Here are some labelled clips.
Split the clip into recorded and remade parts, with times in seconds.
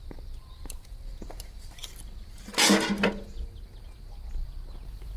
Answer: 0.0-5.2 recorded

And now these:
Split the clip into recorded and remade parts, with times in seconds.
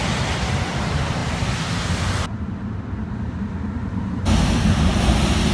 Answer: 0.0-5.5 recorded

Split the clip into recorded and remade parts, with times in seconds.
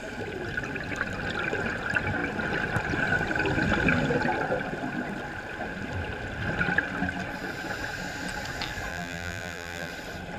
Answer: 0.0-8.9 recorded; 8.9-9.9 remade; 9.9-10.4 recorded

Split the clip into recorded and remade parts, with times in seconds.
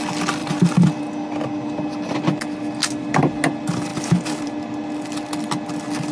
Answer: 0.0-0.4 recorded; 0.4-1.0 remade; 1.0-3.9 recorded; 3.9-4.5 remade; 4.5-6.1 recorded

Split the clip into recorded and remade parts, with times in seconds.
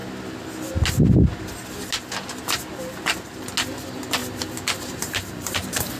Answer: 0.0-4.2 recorded; 4.2-6.0 remade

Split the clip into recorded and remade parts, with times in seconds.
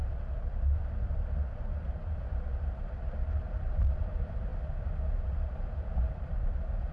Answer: 0.0-4.5 remade; 4.5-5.2 recorded; 5.2-6.9 remade